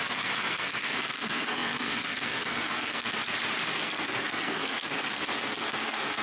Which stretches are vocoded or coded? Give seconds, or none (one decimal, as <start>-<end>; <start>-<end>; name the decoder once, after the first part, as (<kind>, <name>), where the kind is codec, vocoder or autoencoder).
0.0-3.2 (codec, SNAC); 3.8-6.2